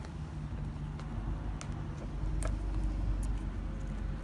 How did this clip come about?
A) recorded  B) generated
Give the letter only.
A